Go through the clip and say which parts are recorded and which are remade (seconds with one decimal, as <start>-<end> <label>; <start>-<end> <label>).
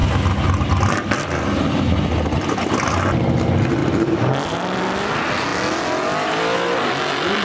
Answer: 0.0-7.4 recorded